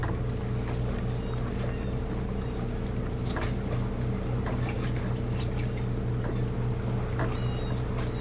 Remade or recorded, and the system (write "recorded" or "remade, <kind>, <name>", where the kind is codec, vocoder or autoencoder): recorded